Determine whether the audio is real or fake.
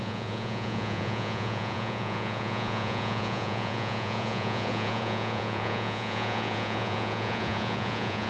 fake